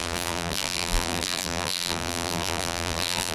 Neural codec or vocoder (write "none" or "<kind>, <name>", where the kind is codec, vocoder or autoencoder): vocoder, BigVGAN v2